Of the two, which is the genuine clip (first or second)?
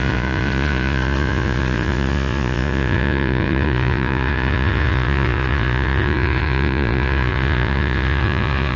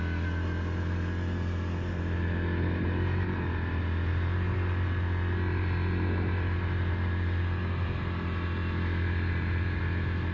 second